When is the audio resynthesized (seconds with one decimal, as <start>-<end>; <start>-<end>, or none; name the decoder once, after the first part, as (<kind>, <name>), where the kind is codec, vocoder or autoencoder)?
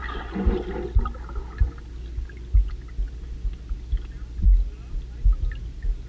none